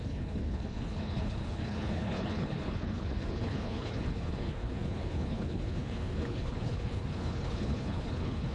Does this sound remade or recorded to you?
remade